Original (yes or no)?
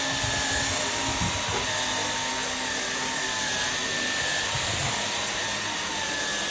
yes